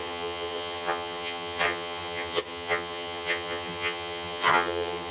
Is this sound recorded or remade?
remade